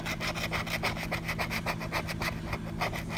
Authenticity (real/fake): real